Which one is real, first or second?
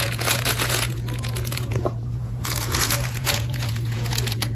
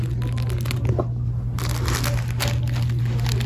second